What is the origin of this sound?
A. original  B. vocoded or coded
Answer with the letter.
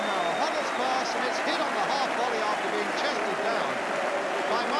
A